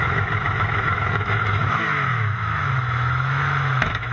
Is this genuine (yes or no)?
no